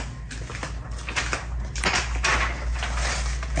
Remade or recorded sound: recorded